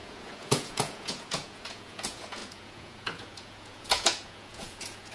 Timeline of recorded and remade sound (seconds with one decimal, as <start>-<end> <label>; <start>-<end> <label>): 0.0-5.1 remade